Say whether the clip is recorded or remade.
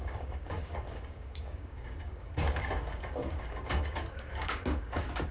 remade